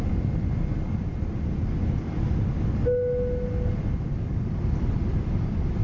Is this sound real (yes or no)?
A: yes